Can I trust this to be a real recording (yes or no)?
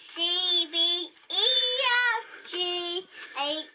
yes